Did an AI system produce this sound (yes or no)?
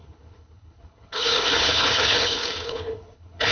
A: yes